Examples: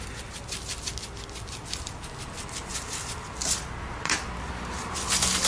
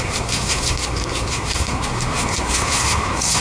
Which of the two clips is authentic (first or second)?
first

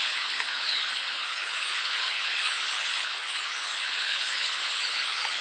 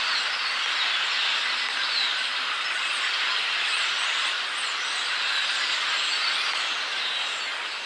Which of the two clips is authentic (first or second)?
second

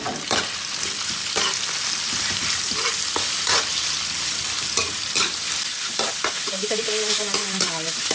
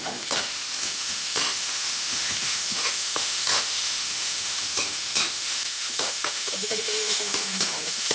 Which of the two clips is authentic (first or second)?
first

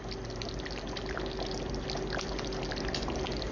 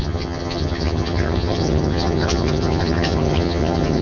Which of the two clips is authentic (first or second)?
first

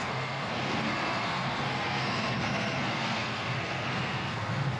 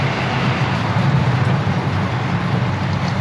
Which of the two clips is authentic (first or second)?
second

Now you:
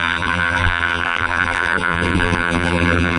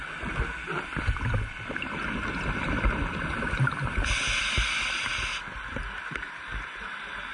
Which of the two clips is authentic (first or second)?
second